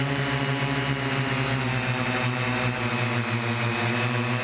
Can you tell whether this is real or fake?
real